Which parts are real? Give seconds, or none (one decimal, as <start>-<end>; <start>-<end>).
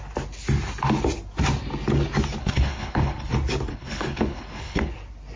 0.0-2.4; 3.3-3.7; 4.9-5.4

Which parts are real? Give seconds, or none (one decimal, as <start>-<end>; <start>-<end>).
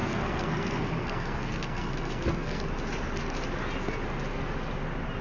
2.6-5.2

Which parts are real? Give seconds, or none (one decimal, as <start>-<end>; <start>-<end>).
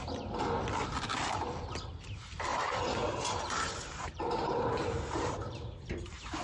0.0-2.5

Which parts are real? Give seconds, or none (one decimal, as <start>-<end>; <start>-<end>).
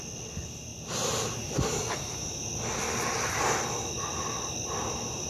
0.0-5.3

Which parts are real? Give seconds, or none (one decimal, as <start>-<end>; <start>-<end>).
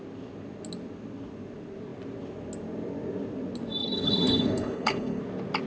0.0-3.8; 5.2-5.7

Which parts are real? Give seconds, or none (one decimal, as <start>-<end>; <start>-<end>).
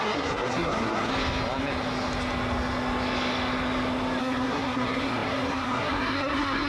1.1-4.2